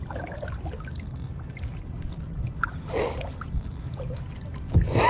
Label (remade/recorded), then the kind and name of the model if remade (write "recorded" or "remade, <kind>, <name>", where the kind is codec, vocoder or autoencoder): recorded